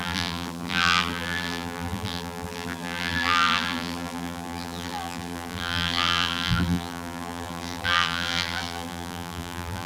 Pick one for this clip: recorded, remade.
remade